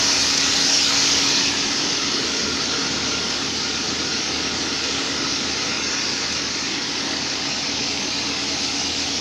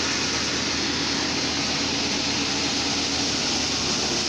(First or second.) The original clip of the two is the second